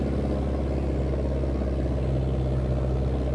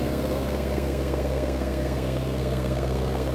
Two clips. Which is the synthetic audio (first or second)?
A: second